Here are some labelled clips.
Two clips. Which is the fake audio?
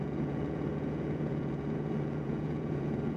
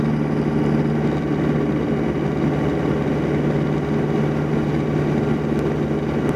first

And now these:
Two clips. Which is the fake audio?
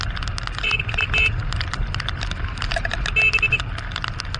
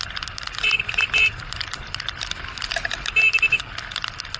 second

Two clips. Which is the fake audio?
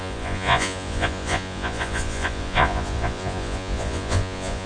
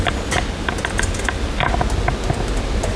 first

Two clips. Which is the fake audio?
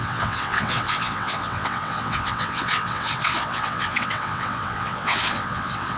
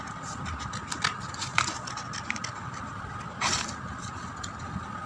first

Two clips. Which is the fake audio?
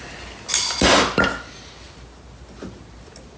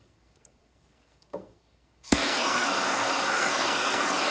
second